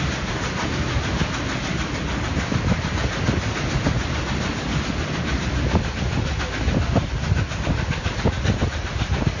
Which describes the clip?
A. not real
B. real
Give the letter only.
B